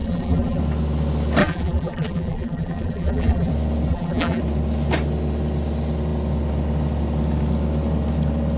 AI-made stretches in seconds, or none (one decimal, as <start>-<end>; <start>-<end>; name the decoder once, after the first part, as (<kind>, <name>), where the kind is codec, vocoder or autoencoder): 0.0-0.6 (vocoder, BigVGAN v2); 1.4-3.5; 3.9-4.4